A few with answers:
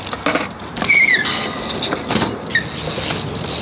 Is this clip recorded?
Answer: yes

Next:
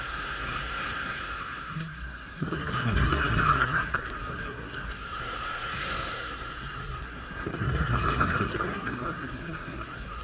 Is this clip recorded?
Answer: no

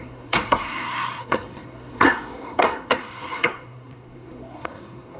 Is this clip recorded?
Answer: no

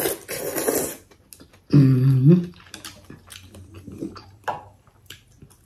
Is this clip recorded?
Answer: yes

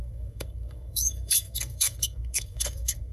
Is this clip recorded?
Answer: no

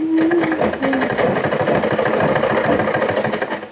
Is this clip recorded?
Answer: yes